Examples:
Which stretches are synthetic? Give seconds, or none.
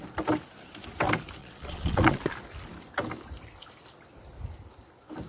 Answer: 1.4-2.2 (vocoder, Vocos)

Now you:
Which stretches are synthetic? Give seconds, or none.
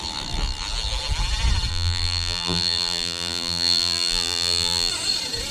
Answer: 1.7-4.9 (vocoder, BigVGAN v2)